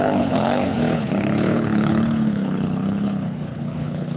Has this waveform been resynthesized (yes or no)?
yes